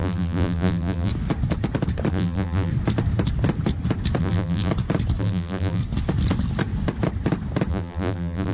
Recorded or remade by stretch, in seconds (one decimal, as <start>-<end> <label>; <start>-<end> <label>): 0.0-1.1 remade; 1.1-2.1 recorded; 2.1-2.7 remade; 2.7-4.2 recorded; 4.2-4.7 remade; 4.7-5.2 recorded; 5.2-5.8 remade; 5.8-7.7 recorded; 7.7-8.5 remade